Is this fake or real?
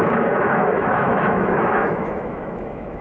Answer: fake